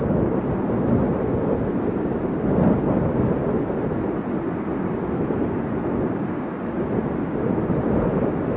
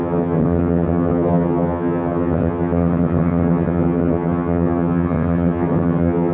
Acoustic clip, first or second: first